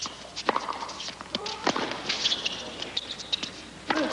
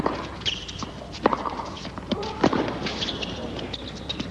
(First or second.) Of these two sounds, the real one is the first